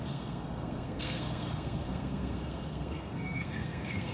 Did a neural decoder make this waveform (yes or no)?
yes